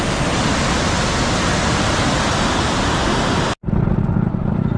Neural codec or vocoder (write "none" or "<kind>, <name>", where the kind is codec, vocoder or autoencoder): none